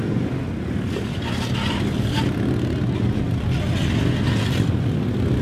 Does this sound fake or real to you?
real